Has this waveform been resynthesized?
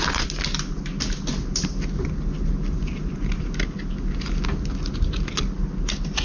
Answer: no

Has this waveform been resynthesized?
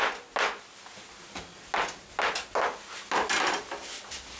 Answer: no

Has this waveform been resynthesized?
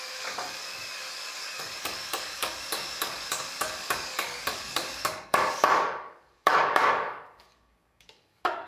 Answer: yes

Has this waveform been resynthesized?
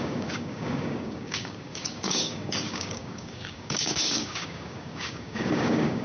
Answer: yes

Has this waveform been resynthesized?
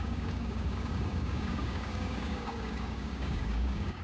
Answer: yes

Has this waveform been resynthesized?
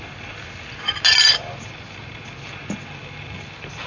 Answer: no